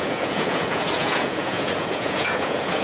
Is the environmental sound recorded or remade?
remade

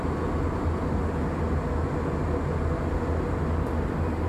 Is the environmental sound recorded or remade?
recorded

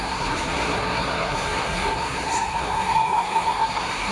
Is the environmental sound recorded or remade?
remade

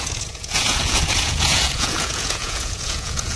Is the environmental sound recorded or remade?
remade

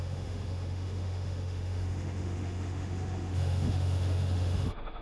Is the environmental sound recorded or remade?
remade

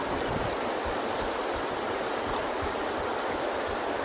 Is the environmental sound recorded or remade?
recorded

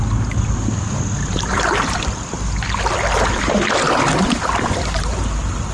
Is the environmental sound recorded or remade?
recorded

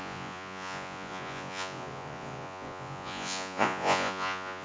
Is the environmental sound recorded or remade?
remade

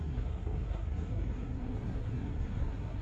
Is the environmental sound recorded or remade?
remade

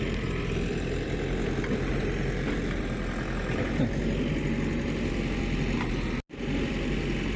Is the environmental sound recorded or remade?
recorded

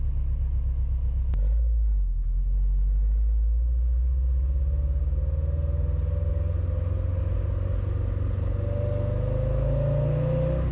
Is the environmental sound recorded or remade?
recorded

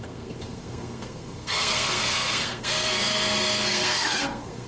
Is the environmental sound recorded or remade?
remade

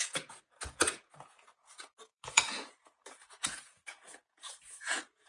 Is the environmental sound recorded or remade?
remade